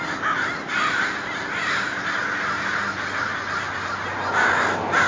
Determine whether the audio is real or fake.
real